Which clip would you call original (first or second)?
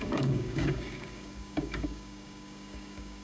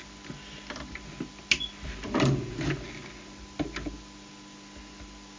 second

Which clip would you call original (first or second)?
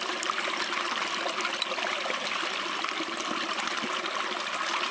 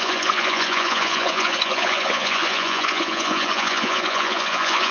first